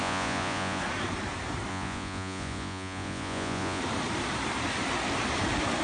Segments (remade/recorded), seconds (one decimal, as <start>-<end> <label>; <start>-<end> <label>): 0.0-0.8 remade; 0.8-1.7 recorded; 1.7-3.8 remade; 3.8-5.8 recorded